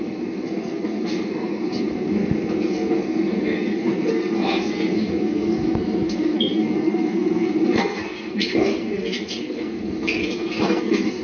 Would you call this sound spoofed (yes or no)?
yes